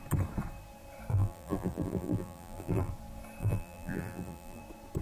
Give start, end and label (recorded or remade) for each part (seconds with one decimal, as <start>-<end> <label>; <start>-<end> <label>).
0.0-1.1 recorded; 1.1-2.9 remade; 2.9-3.4 recorded; 3.4-4.6 remade; 4.6-5.0 recorded